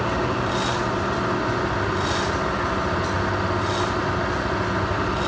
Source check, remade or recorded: recorded